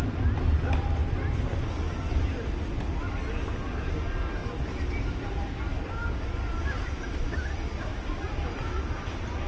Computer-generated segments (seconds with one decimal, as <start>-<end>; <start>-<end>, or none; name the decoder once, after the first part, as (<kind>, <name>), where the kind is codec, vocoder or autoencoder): none